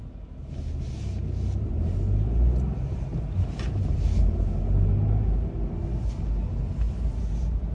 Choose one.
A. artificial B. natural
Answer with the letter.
B